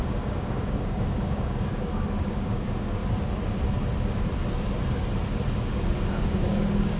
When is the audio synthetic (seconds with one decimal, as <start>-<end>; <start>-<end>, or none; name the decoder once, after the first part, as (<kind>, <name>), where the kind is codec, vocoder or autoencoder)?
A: 0.0-3.0 (codec, DAC); 5.6-7.0